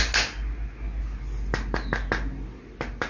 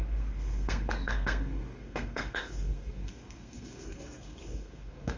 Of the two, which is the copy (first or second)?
second